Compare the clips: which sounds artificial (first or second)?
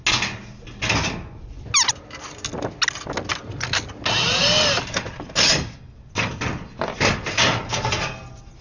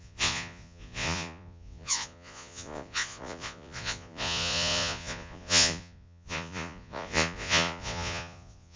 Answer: second